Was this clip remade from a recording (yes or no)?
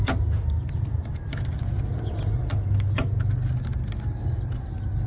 no